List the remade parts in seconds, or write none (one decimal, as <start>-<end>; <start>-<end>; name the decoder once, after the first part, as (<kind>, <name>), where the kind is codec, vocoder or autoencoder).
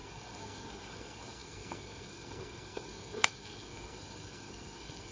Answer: 0.0-5.1 (codec, SNAC)